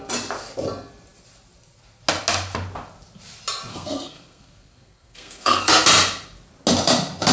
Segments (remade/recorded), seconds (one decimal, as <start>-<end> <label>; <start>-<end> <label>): 0.0-3.7 recorded; 3.7-5.7 remade; 5.7-7.3 recorded